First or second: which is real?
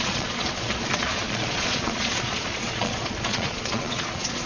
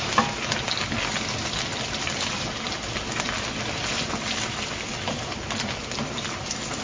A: second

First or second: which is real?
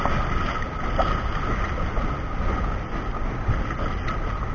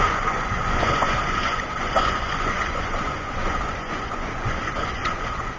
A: first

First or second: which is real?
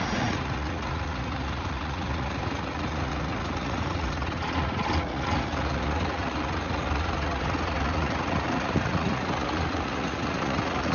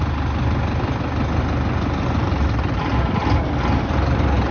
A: second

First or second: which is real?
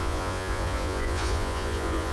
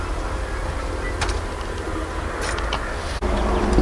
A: second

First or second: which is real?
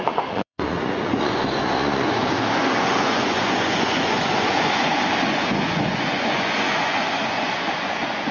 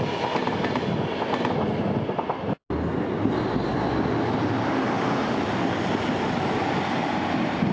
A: second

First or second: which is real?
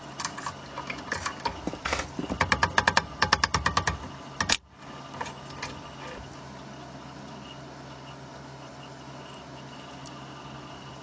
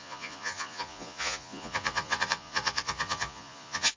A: first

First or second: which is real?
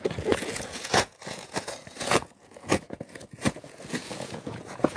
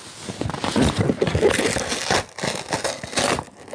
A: second